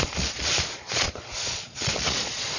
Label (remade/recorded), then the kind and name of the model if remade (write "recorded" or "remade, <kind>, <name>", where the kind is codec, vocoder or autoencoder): remade, vocoder, Vocos